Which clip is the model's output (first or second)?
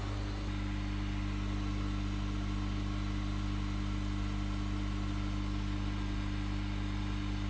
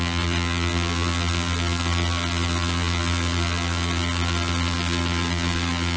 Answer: second